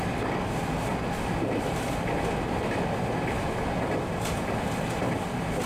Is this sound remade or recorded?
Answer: recorded